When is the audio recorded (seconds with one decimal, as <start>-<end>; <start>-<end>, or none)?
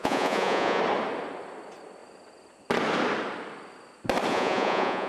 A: 0.8-4.3